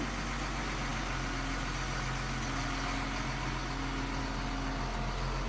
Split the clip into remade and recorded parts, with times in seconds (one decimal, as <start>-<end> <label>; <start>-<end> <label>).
0.0-5.5 recorded